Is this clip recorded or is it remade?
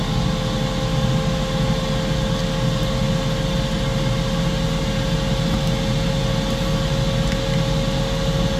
recorded